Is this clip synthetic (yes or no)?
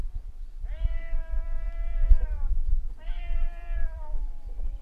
yes